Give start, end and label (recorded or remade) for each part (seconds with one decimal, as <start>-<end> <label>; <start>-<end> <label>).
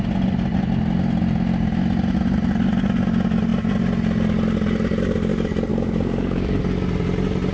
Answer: 0.0-5.7 recorded; 5.7-6.6 remade; 6.6-7.5 recorded